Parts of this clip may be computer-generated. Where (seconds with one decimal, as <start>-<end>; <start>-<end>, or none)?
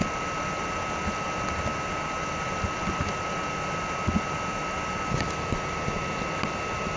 none